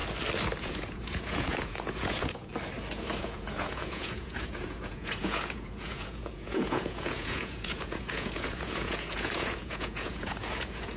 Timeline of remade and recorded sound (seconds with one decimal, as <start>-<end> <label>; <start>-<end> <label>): 0.0-0.6 recorded; 0.6-2.5 remade; 2.5-3.2 recorded; 3.2-11.0 remade